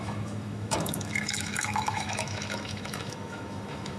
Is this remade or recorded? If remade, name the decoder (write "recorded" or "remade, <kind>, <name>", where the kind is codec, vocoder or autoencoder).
remade, autoencoder, DAC-VAE